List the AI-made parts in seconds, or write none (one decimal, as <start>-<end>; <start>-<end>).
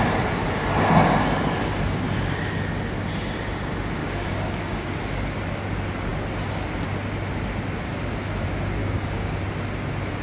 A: 4.0-4.9; 8.8-9.4